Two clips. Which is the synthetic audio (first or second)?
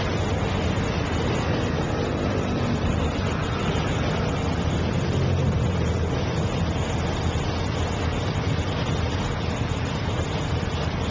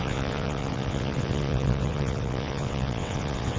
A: second